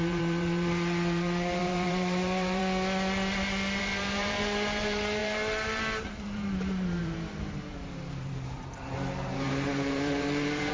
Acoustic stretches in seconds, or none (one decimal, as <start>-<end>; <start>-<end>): 2.6-3.8